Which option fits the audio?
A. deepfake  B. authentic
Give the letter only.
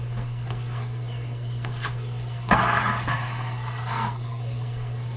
A